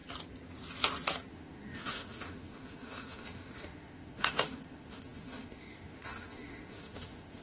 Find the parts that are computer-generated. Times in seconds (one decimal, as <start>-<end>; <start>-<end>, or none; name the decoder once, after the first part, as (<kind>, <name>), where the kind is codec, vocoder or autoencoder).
1.3-7.4 (autoencoder, DAC-VAE)

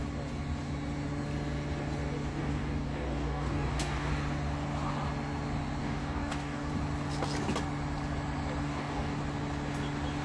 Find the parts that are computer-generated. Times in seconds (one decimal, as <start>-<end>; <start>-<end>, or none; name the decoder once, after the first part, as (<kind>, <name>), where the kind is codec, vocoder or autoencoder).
2.3-4.1 (codec, DAC); 5.8-6.7; 8.6-9.2

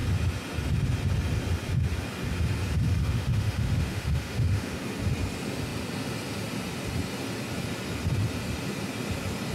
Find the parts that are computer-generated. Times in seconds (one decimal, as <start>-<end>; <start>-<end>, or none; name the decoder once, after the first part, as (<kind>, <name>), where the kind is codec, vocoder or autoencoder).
3.0-4.8 (autoencoder, DAC-VAE)

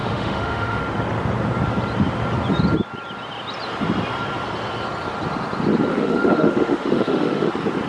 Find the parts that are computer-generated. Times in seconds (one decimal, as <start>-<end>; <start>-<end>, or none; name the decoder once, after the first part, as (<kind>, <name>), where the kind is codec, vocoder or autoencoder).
0.0-0.8 (autoencoder, DAC-VAE); 5.9-7.5

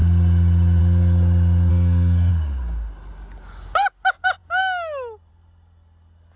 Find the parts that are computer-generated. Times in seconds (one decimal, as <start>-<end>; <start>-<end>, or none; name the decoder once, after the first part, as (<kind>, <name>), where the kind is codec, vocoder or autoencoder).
1.7-2.3 (codec, SNAC)

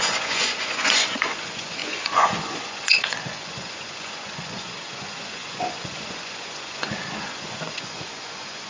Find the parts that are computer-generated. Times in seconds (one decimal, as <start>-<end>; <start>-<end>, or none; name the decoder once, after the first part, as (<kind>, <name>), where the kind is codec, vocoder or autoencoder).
0.0-8.7 (vocoder, Vocos)

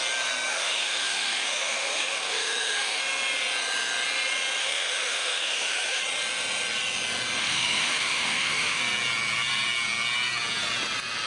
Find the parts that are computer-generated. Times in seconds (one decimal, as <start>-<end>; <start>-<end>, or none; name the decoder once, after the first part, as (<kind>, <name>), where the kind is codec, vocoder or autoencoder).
0.5-3.0 (autoencoder, DAC-VAE); 4.6-6.0; 7.4-8.8

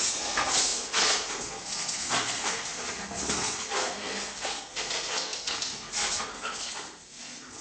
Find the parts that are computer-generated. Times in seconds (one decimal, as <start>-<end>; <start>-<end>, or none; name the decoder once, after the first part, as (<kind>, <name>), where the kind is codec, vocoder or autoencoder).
0.0-7.6 (codec, SNAC)